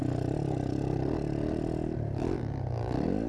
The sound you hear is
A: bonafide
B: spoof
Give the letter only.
A